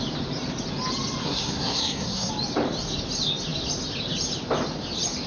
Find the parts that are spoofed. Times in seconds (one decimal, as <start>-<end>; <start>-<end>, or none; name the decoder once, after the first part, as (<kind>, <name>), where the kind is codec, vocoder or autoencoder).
1.2-2.3 (codec, SNAC)